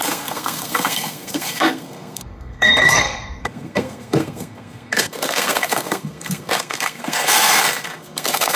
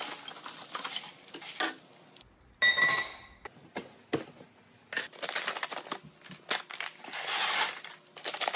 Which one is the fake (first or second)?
first